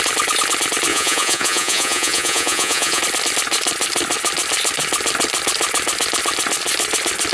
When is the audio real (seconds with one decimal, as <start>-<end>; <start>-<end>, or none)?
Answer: 0.0-0.9; 3.0-7.3